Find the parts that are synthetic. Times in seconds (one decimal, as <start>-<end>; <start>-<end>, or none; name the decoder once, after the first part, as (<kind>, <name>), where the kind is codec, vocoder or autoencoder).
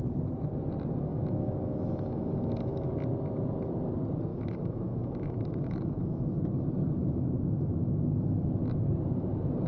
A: 1.1-2.9 (autoencoder, DAC-VAE); 4.3-6.2; 7.0-8.5